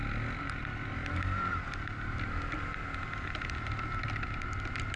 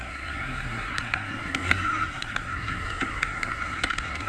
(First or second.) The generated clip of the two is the second